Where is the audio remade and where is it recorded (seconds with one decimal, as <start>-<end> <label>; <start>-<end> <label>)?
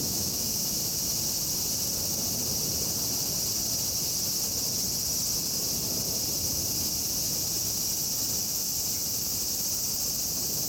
0.0-0.5 remade; 0.5-10.7 recorded